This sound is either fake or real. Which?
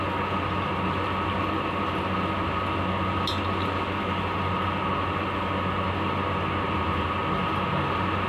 real